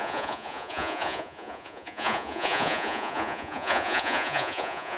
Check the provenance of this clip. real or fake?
fake